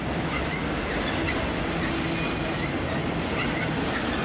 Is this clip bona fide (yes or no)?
yes